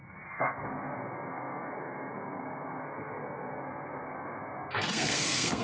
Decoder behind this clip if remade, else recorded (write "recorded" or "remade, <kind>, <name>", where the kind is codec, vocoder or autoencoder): remade, codec, SNAC